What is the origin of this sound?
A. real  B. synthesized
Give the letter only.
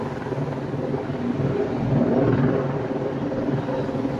A